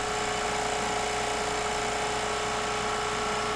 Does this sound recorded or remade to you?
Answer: recorded